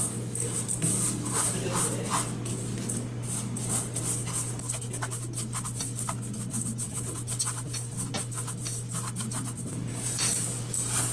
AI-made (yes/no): no